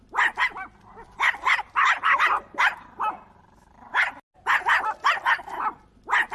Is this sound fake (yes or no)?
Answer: no